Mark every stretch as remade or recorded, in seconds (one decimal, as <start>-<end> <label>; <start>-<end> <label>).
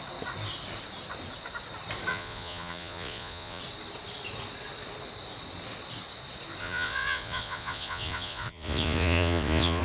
0.0-2.1 recorded; 2.1-3.6 remade; 3.6-6.6 recorded; 6.6-9.8 remade